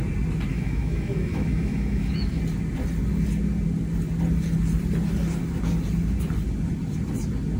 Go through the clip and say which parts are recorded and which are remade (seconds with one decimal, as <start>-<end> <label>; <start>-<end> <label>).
0.0-0.5 recorded; 0.5-2.4 remade; 2.4-7.6 recorded